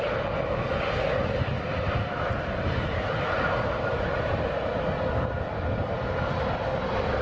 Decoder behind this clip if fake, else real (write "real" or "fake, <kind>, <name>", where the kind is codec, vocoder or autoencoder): real